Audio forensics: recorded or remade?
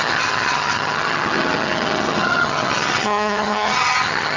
remade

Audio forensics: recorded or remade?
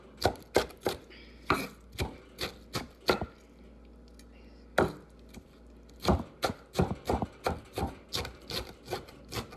recorded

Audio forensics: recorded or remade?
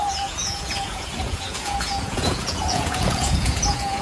remade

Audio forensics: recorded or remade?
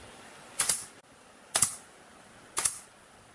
recorded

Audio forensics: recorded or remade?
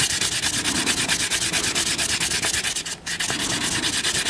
recorded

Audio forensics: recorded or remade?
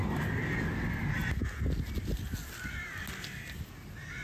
recorded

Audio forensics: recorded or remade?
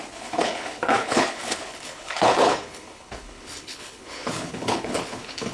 remade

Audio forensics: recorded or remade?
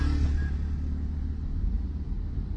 recorded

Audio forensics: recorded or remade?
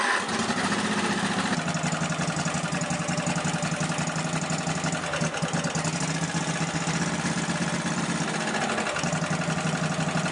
recorded